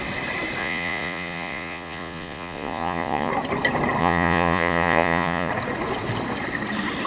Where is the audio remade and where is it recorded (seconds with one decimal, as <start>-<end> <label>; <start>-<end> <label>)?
0.0-0.6 recorded; 0.6-3.3 remade; 3.3-4.0 recorded; 4.0-5.5 remade; 5.5-7.1 recorded